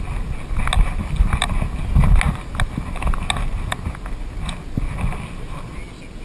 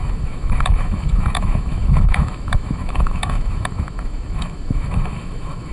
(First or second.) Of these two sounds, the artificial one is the second